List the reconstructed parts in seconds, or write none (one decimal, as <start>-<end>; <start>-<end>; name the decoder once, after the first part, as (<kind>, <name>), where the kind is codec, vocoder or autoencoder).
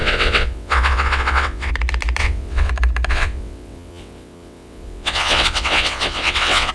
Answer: 0.0-1.7 (vocoder, WaveNeXt); 2.2-2.7; 3.1-6.7